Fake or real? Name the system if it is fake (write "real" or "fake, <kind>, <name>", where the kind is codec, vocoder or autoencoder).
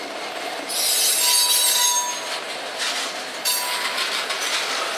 real